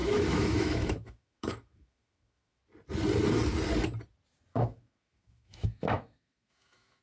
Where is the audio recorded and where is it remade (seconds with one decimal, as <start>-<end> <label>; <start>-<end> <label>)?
0.0-2.6 remade; 2.6-4.5 recorded; 4.5-7.0 remade